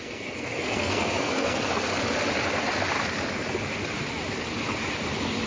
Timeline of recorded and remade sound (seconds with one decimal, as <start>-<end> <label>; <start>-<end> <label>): 0.0-1.9 remade; 1.9-5.5 recorded